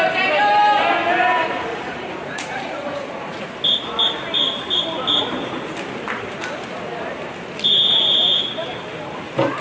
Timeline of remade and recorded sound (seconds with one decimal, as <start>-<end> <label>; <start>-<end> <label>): 0.0-1.7 recorded; 1.7-3.4 remade; 3.4-9.6 recorded